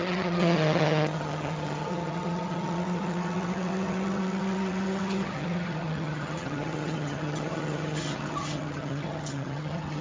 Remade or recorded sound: remade